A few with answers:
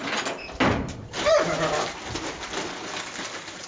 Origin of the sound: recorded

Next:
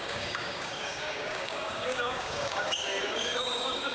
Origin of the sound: remade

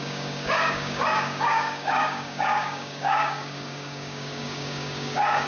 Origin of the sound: remade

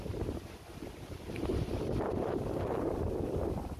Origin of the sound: recorded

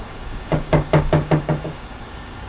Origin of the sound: remade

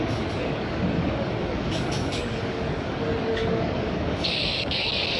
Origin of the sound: remade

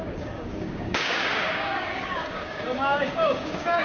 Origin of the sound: remade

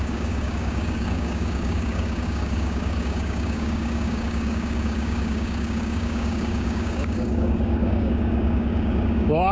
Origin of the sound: remade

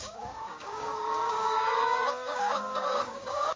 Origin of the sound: remade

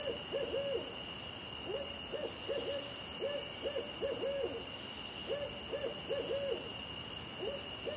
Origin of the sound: recorded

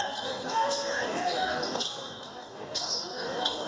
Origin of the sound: remade